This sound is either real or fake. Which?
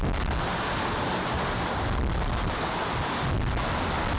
real